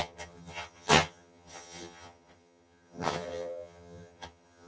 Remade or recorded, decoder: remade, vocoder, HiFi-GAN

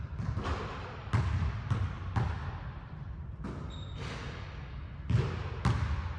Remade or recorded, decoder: recorded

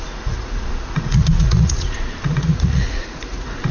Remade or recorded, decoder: remade, vocoder, Vocos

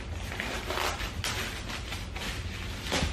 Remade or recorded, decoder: recorded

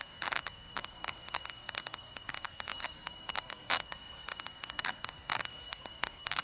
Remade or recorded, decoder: remade, codec, SNAC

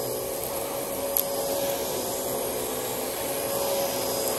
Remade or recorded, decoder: recorded